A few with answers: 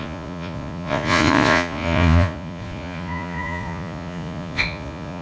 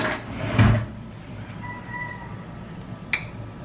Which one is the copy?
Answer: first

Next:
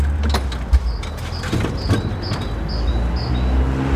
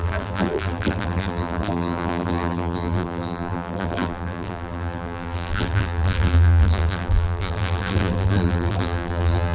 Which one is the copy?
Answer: second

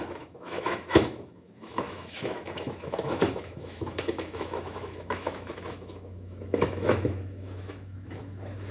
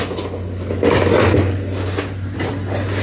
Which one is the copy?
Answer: first